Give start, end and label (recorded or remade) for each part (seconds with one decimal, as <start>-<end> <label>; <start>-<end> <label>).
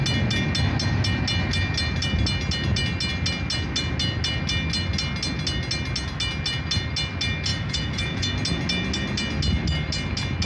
0.0-7.5 recorded; 7.5-8.3 remade; 8.3-10.5 recorded